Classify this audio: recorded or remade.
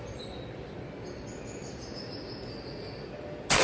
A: recorded